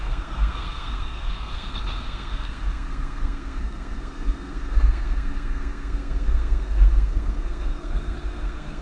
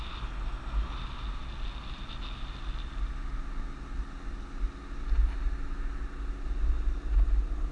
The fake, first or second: first